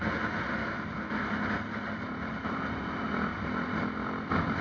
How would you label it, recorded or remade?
recorded